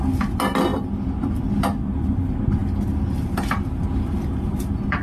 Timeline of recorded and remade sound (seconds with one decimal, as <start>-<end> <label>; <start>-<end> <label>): 0.0-5.0 recorded